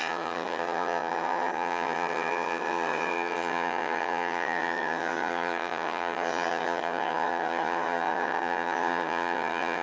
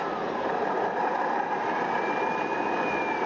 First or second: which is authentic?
second